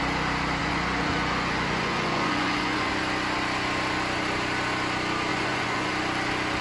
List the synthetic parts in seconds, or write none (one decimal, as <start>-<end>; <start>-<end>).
0.6-2.9; 5.3-5.9